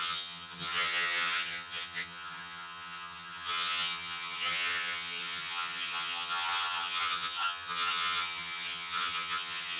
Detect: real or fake fake